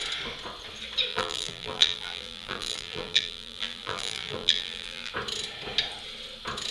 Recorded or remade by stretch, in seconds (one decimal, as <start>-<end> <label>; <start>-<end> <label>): 0.0-1.1 recorded; 1.1-5.1 remade; 5.1-6.7 recorded